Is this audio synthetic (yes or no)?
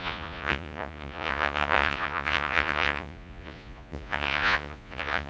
yes